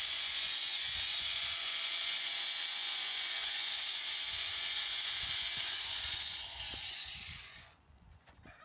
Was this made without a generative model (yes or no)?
no